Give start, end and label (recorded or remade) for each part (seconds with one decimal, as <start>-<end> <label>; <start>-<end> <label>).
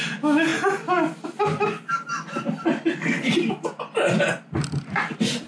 0.0-5.5 recorded